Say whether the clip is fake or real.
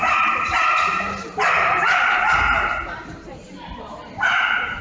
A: fake